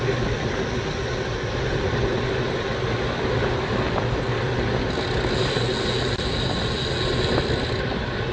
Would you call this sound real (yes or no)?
yes